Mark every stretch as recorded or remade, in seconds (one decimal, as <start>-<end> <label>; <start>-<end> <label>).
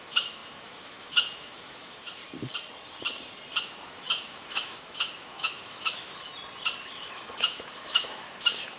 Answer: 0.0-2.2 remade; 2.2-3.6 recorded; 3.6-6.3 remade; 6.3-6.9 recorded; 6.9-8.8 remade